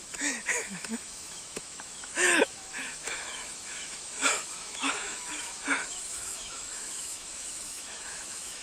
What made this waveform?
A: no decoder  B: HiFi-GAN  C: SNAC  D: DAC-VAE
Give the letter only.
D